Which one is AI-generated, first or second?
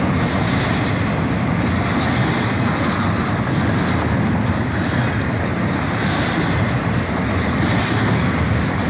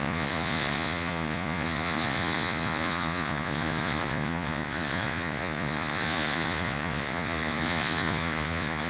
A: second